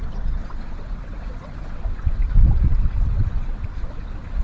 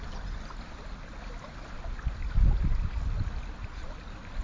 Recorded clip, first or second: second